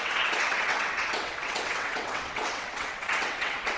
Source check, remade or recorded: remade